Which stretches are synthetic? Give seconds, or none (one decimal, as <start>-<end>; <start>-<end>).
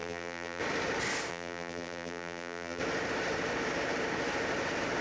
0.0-0.6; 1.3-2.8